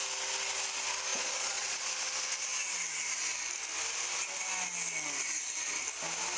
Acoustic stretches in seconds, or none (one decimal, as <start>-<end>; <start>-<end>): 0.0-1.1; 1.9-6.4